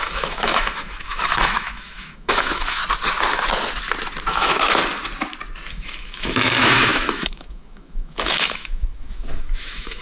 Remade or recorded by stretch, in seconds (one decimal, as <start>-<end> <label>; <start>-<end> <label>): 0.0-2.8 remade; 2.8-4.3 recorded; 4.3-4.8 remade; 4.8-5.7 recorded; 5.7-10.0 remade